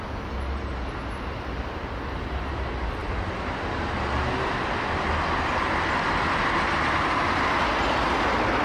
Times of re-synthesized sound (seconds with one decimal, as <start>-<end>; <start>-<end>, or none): none

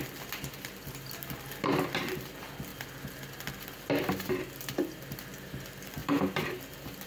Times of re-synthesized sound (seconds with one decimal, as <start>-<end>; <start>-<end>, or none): 0.0-2.7; 4.7-7.1

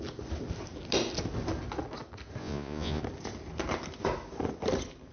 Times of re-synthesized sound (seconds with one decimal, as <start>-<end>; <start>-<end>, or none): 2.4-3.0

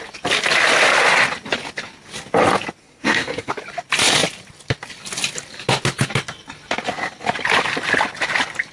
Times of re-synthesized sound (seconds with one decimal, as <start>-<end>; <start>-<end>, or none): 2.8-3.5

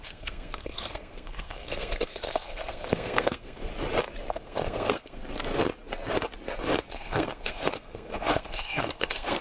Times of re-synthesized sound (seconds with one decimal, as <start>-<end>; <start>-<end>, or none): 0.0-3.7; 4.3-5.2; 6.9-9.4

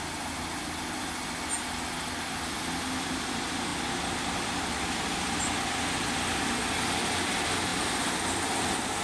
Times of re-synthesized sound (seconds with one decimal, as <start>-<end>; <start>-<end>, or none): none

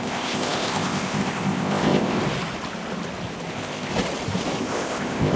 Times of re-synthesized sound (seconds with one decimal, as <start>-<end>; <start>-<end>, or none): 0.0-2.2; 3.5-3.9; 4.6-5.4